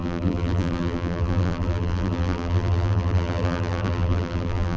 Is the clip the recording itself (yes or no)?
no